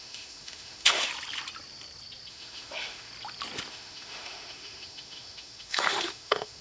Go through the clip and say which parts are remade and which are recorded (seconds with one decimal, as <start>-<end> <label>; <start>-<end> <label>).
0.0-1.1 remade; 1.1-2.3 recorded; 2.3-3.1 remade; 3.1-3.7 recorded; 3.7-6.6 remade